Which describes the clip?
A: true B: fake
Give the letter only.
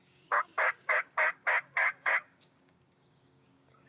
B